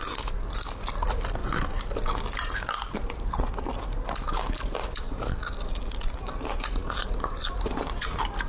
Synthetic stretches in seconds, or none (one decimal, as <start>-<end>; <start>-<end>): none